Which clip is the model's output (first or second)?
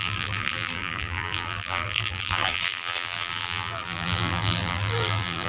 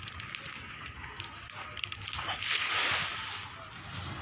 first